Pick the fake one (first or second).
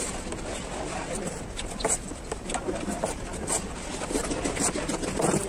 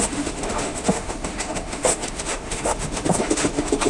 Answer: second